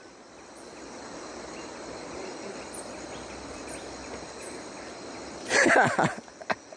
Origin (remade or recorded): recorded